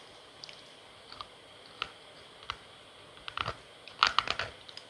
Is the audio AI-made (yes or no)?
no